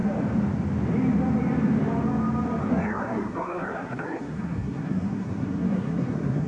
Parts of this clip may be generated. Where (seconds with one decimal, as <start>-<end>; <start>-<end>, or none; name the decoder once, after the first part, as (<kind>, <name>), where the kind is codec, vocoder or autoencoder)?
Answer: 2.6-6.5 (codec, SNAC)